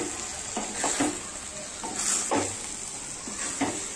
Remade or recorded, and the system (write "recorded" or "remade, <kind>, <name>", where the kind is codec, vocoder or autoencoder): recorded